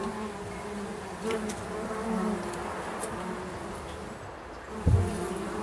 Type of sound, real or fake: real